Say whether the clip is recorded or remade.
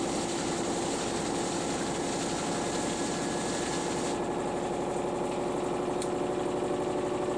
recorded